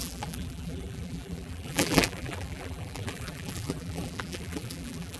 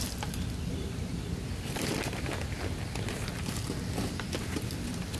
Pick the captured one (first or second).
second